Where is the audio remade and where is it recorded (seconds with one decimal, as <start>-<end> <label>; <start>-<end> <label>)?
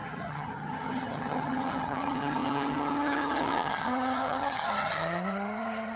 0.0-6.0 remade